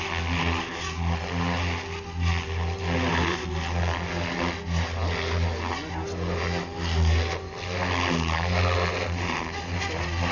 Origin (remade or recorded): recorded